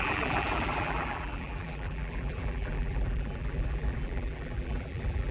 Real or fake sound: fake